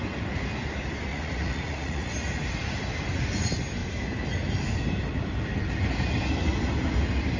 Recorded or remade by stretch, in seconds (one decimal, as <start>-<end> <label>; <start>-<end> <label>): 0.0-1.1 recorded; 1.1-2.1 remade; 2.1-7.4 recorded